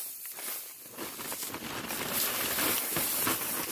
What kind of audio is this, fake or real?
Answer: real